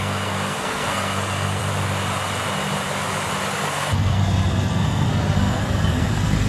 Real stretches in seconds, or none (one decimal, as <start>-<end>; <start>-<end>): 1.6-3.6